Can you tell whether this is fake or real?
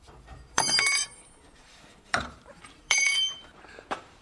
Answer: fake